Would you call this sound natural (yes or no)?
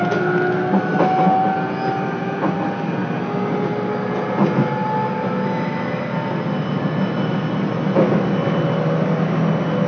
yes